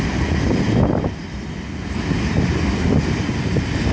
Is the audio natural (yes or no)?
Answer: yes